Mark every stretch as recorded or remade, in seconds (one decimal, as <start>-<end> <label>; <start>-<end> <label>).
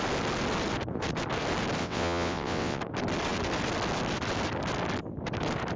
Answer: 0.0-1.8 recorded; 1.8-2.8 remade; 2.8-5.8 recorded